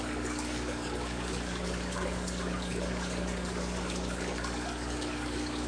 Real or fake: fake